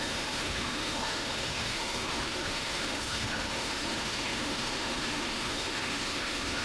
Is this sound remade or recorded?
remade